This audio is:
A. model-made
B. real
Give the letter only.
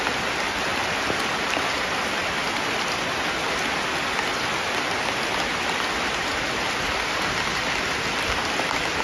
B